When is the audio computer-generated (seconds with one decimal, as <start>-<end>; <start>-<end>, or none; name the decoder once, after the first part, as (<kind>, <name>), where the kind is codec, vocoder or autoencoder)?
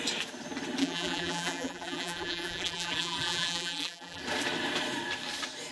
0.8-4.2 (vocoder, BigVGAN v2)